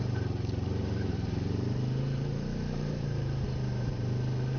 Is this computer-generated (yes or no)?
yes